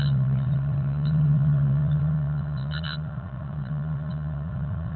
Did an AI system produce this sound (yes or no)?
yes